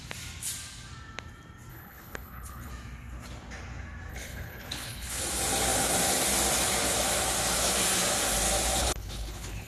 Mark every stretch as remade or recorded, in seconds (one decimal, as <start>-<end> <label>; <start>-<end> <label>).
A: 0.0-1.7 recorded; 1.7-2.7 remade; 2.7-4.1 recorded; 4.1-5.2 remade; 5.2-8.8 recorded; 8.8-9.7 remade